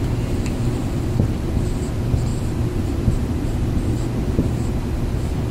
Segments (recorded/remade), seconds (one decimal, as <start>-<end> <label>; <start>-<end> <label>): 0.0-2.3 recorded; 2.3-3.7 remade; 3.7-5.5 recorded